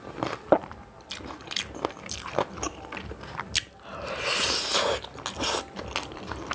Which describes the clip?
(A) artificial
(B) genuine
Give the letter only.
B